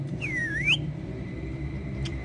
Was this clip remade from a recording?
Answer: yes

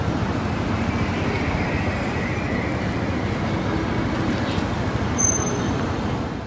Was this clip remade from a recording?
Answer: no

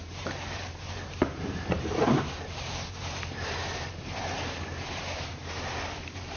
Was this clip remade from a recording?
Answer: yes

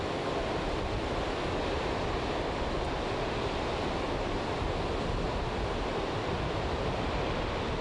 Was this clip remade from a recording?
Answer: no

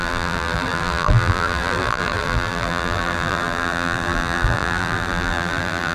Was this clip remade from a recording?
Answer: yes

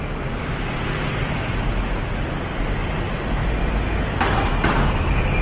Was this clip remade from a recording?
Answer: no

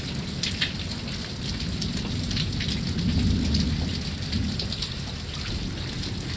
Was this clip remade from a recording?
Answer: no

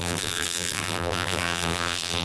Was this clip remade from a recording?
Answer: yes